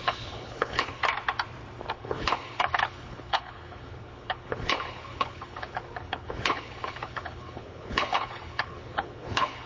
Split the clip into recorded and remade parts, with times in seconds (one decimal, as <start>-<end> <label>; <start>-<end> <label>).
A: 0.0-1.0 remade; 1.0-1.9 recorded; 1.9-9.7 remade